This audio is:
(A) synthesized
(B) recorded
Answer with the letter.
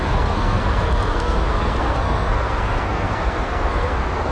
A